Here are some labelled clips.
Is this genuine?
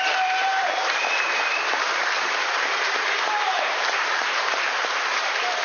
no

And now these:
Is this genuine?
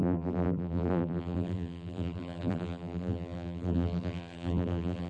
no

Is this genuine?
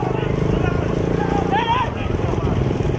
yes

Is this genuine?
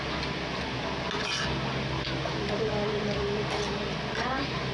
yes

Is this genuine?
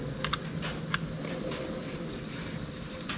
yes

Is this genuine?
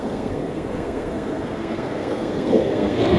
no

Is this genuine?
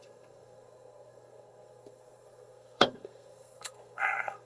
no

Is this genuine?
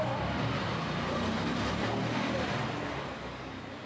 yes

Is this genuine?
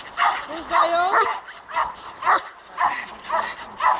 yes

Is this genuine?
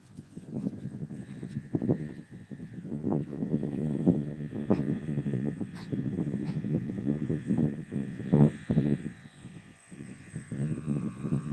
no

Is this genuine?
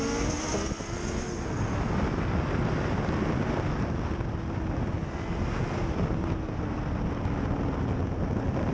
yes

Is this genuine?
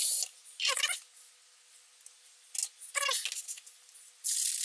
yes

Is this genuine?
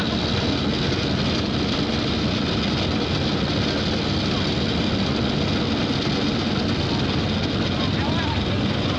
yes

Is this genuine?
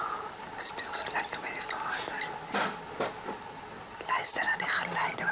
yes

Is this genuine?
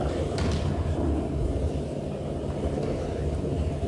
yes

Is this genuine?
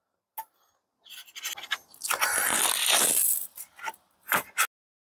yes